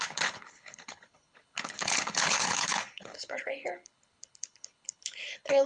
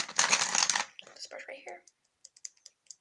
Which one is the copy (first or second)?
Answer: first